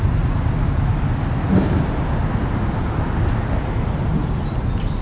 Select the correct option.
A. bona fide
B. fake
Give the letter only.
A